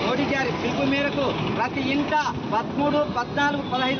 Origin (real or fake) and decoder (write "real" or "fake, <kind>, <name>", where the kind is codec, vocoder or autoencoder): real